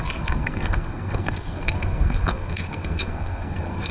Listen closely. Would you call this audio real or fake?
fake